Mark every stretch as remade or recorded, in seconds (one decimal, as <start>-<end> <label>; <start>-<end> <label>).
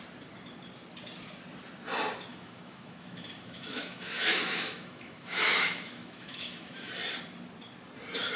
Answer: 0.0-2.3 recorded; 2.3-6.9 remade; 6.9-8.4 recorded